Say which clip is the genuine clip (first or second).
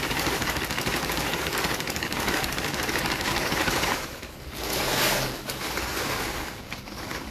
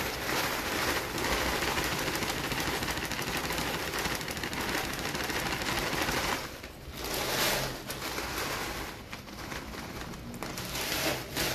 second